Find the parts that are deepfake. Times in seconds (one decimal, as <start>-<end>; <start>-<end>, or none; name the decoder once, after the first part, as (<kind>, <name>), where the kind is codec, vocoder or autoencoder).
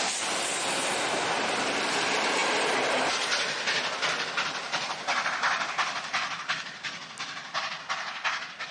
none